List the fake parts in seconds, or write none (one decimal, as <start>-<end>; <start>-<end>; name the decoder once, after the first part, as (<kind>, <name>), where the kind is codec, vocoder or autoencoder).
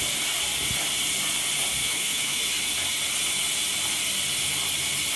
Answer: 1.8-2.4 (autoencoder, DAC-VAE)